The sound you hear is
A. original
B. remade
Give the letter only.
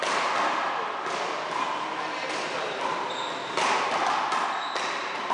A